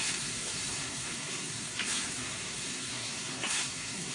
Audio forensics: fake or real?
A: fake